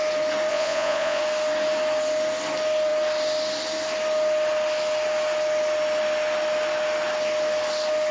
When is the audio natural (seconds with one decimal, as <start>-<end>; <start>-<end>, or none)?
0.0-0.5; 1.2-8.1

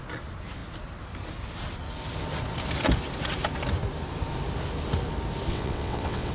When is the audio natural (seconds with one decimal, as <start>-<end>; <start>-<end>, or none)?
0.0-5.5